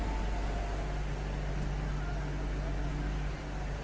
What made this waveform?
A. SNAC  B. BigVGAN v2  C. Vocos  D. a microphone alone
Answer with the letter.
D